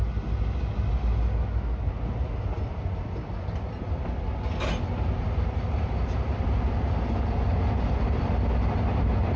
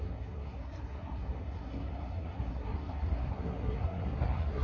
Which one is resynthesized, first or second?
second